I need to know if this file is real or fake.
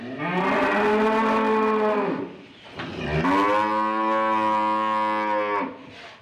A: real